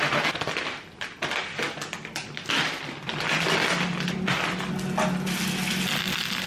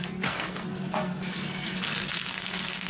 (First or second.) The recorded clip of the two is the first